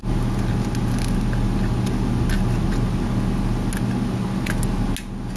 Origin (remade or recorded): recorded